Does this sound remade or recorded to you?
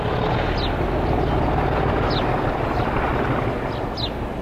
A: recorded